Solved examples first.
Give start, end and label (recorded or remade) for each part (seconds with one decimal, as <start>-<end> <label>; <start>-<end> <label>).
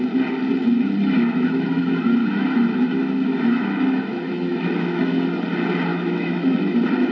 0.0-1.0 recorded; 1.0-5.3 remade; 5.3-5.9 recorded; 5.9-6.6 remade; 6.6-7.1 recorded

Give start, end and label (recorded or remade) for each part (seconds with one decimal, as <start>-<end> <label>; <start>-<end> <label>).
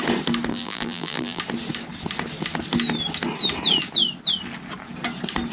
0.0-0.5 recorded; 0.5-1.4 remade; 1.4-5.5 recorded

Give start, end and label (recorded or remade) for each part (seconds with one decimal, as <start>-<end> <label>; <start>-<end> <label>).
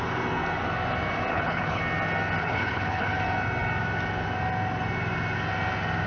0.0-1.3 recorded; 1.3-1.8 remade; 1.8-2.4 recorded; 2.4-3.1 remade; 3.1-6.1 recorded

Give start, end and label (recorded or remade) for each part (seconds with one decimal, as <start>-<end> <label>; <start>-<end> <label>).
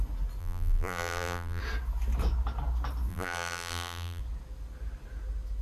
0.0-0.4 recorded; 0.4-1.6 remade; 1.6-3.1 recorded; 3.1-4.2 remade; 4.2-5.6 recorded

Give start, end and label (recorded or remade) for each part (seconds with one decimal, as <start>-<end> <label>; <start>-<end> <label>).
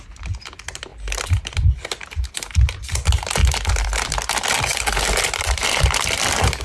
0.0-0.9 recorded; 0.9-2.3 remade; 2.3-3.4 recorded; 3.4-6.6 remade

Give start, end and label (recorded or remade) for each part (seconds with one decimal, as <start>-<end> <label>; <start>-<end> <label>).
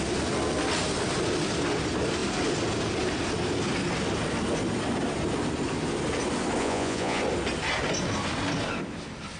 0.0-6.6 recorded; 6.6-7.2 remade; 7.2-9.4 recorded